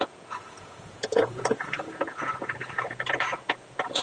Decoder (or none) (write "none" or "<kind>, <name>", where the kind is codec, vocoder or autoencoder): vocoder, Vocos